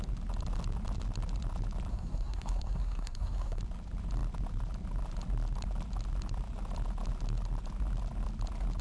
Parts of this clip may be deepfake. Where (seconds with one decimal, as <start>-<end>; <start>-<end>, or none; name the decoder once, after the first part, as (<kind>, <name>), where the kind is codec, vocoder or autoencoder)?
1.9-3.6 (codec, SNAC)